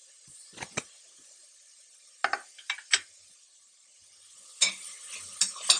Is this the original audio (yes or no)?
yes